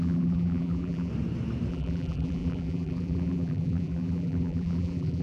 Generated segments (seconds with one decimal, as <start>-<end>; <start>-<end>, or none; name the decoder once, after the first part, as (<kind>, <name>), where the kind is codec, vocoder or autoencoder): 0.0-1.1 (vocoder, BigVGAN v2); 1.7-5.2